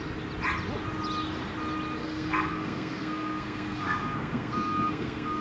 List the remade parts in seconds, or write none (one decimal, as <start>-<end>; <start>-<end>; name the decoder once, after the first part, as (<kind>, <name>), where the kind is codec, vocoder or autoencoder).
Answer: 2.0-5.4 (codec, SNAC)